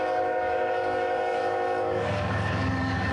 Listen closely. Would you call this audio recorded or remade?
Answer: remade